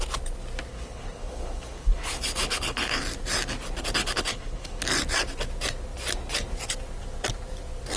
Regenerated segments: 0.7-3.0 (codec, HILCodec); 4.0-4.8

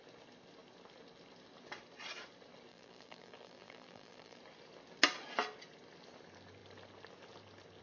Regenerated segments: 2.7-4.4 (vocoder, BigVGAN v2)

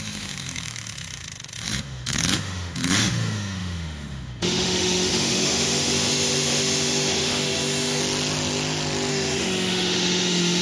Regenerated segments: 0.0-8.0 (autoencoder, DAC-VAE); 9.1-10.6

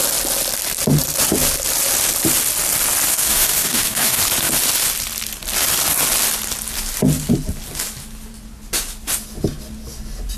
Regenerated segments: 3.1-4.2 (codec, DAC)

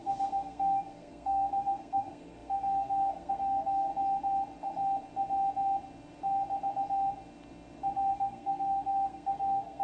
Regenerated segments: 0.0-3.9 (codec, SNAC); 8.1-9.8

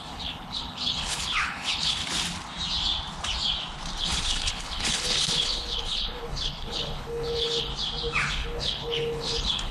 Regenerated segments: 0.0-2.0 (codec, HILCodec); 4.0-7.7; 8.3-9.7

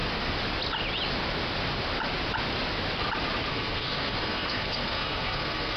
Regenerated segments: 3.5-5.8 (codec, SNAC)

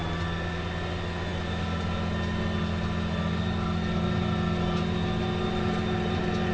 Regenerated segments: none